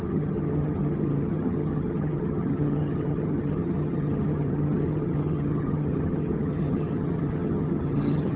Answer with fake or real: fake